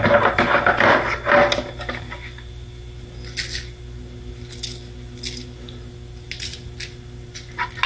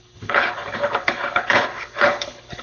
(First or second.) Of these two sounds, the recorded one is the first